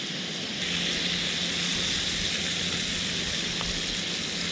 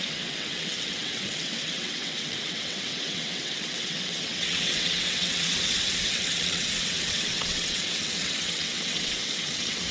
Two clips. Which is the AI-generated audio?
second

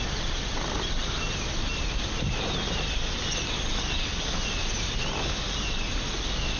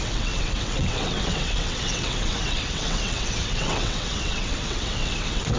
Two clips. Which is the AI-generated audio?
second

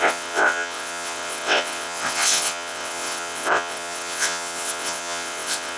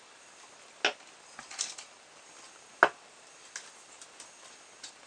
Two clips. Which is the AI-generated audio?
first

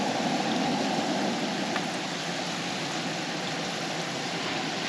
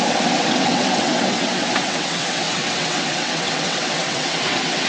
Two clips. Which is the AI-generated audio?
second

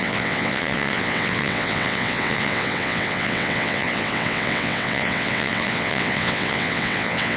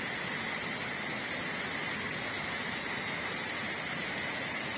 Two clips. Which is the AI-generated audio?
first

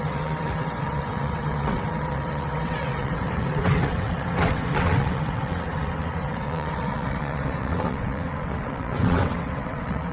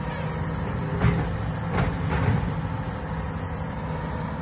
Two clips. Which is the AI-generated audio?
first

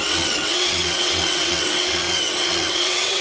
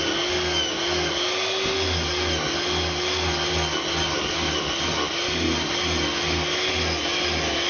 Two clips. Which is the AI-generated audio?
first